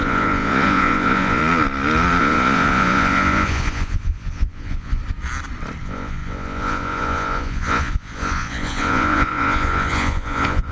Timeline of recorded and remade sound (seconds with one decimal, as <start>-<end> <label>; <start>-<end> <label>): 0.0-1.4 remade; 1.4-2.2 recorded; 2.2-5.0 remade; 5.0-5.8 recorded; 5.8-10.7 remade